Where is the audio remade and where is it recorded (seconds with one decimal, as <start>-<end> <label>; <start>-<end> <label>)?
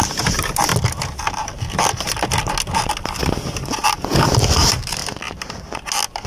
0.0-0.7 remade; 0.7-4.5 recorded; 4.5-5.0 remade; 5.0-6.3 recorded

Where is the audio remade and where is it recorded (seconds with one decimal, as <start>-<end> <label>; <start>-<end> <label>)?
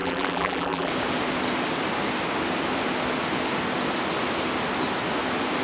0.0-0.9 remade; 0.9-5.6 recorded